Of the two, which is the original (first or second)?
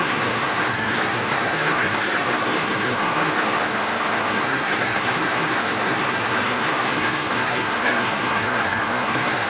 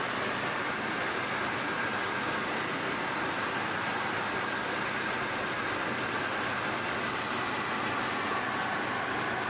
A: second